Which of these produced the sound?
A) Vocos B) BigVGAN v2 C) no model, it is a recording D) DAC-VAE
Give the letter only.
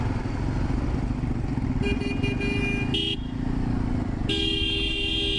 C